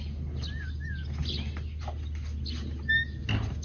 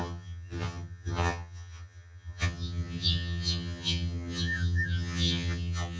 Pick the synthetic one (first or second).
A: second